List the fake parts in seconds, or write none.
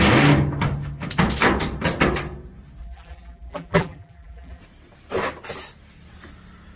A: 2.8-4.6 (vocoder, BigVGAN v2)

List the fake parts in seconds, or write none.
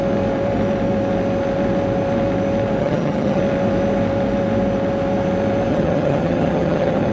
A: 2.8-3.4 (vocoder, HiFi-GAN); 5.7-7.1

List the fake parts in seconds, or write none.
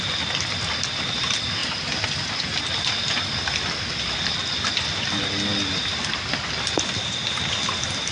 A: none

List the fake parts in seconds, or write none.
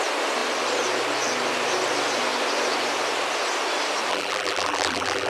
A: 4.1-5.3 (vocoder, BigVGAN v2)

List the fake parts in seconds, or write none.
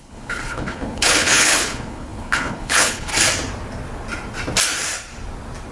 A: 0.0-3.1 (codec, HILCodec)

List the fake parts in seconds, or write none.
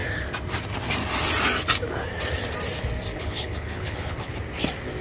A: 3.1-4.3 (codec, HILCodec)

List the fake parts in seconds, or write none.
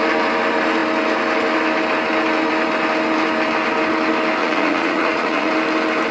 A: 4.4-5.5 (vocoder, Vocos)